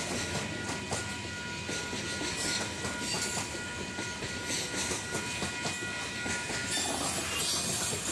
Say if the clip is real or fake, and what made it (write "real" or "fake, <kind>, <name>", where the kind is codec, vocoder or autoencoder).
real